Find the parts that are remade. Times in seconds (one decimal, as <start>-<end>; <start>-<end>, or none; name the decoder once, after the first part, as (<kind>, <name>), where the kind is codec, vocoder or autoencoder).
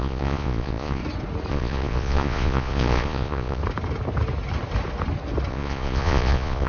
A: 0.0-1.0 (vocoder, Vocos); 1.5-3.6; 5.5-6.7